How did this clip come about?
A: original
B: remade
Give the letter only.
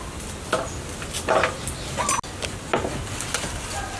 A